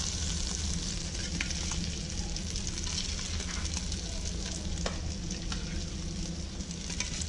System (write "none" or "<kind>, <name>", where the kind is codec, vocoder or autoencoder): none